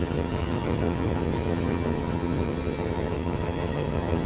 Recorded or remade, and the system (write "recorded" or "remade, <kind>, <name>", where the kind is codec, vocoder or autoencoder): remade, vocoder, HiFi-GAN